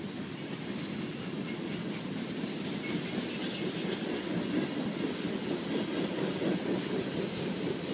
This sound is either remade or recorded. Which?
recorded